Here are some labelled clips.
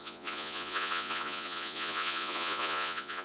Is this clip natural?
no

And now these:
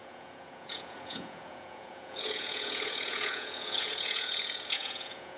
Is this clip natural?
no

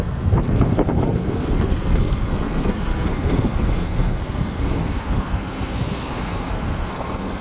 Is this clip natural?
no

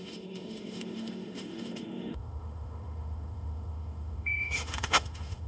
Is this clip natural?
no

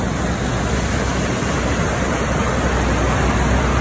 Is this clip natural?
yes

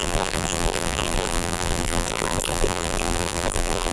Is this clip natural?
no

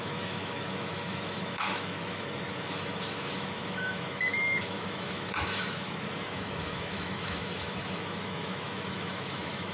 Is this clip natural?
no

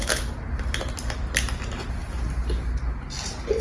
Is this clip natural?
yes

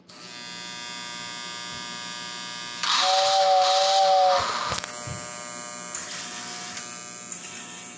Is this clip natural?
yes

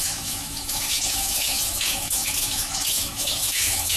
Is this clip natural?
no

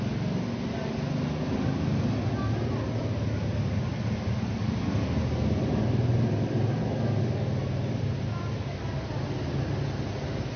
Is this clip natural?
yes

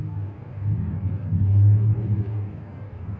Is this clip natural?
no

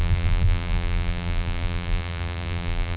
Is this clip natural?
no